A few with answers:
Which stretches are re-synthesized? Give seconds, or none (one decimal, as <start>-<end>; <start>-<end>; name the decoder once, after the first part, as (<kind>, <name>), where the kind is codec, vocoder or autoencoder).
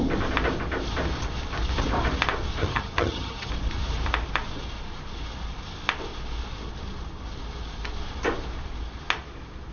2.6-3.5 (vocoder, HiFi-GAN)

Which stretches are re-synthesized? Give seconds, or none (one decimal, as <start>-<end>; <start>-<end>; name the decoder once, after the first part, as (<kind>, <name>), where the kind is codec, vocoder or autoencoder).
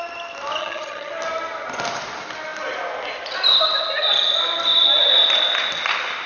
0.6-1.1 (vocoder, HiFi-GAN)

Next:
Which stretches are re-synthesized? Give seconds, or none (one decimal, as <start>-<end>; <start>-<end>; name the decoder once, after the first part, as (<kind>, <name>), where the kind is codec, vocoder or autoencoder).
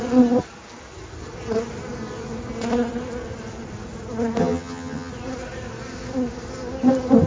4.4-5.1 (vocoder, HiFi-GAN)